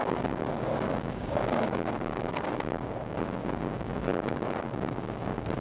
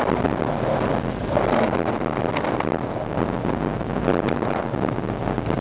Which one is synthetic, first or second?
first